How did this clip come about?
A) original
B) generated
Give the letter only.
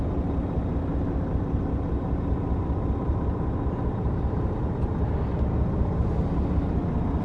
A